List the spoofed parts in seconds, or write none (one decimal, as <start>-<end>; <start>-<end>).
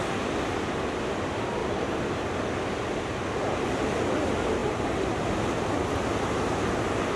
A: 1.6-2.3